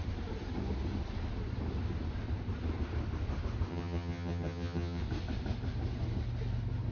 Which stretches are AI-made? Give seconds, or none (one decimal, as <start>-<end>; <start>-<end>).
3.7-5.0